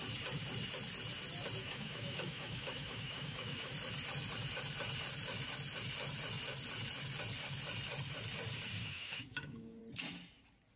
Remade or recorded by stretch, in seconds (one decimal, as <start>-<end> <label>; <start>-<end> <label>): 0.0-1.6 recorded; 1.6-3.7 remade; 3.7-8.8 recorded; 8.8-9.8 remade; 9.8-10.8 recorded